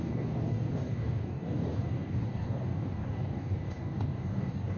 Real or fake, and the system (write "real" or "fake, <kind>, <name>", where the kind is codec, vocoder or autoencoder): fake, codec, DAC